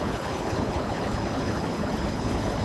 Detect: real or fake fake